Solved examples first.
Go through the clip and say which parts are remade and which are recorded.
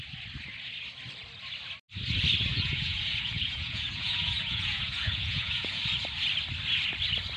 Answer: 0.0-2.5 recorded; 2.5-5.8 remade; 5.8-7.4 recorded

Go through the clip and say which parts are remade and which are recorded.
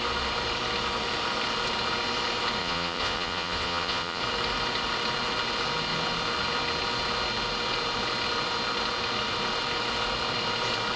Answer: 0.0-2.6 recorded; 2.6-4.2 remade; 4.2-11.0 recorded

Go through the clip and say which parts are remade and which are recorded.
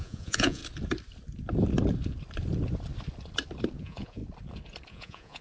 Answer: 0.0-0.6 remade; 0.6-3.8 recorded; 3.8-4.2 remade; 4.2-4.9 recorded; 4.9-5.4 remade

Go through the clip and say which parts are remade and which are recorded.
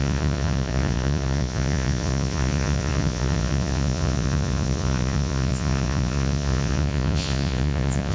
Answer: 0.0-8.1 remade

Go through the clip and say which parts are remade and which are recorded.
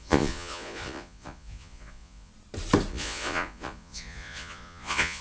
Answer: 0.0-2.3 remade; 2.3-2.9 recorded; 2.9-5.2 remade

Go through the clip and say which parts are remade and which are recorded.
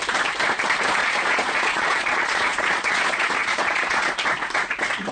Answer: 0.0-1.0 recorded; 1.0-4.1 remade; 4.1-5.1 recorded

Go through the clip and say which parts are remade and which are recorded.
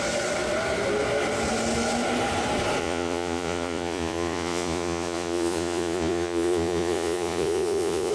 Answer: 0.0-2.8 recorded; 2.8-8.1 remade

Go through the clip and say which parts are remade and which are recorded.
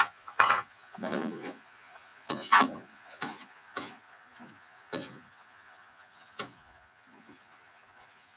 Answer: 0.0-8.4 remade